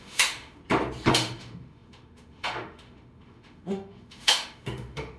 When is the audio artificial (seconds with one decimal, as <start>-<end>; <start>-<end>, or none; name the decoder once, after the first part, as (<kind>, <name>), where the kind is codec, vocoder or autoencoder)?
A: 0.0-0.6 (autoencoder, DAC-VAE); 1.1-5.2

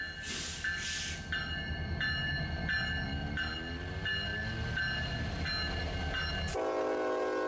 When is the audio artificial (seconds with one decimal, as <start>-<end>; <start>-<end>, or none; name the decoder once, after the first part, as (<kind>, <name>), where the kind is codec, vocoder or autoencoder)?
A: none

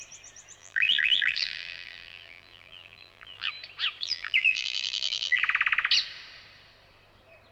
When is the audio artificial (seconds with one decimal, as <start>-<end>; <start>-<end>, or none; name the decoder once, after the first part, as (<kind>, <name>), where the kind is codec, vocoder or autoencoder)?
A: 0.6-3.5 (vocoder, BigVGAN v2); 4.0-5.4

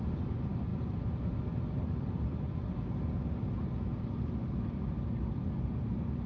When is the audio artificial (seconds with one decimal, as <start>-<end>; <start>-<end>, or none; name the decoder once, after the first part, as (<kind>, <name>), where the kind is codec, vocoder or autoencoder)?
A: none

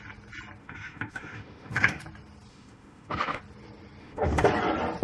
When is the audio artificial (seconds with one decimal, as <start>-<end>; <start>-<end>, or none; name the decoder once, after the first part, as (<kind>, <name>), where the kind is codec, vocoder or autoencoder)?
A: 0.6-2.0 (autoencoder, DAC-VAE); 2.5-3.4; 4.0-4.5

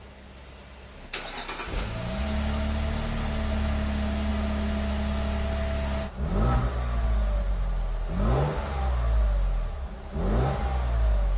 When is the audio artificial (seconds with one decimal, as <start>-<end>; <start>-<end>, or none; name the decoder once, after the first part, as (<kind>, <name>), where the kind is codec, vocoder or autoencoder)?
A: none